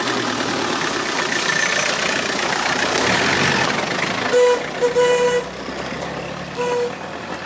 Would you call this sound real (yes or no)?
yes